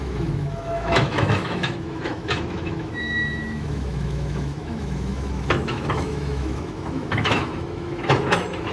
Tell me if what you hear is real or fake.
fake